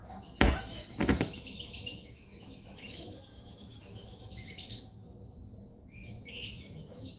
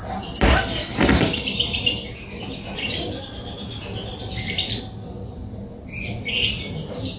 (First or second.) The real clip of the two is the second